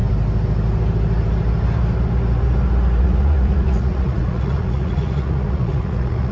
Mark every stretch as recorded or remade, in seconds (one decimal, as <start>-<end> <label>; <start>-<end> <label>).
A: 0.0-3.0 recorded; 3.0-6.3 remade